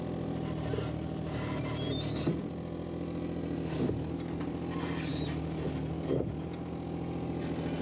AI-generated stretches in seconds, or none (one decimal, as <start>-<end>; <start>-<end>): none